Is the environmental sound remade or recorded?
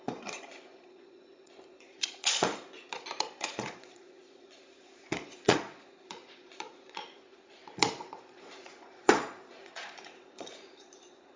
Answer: remade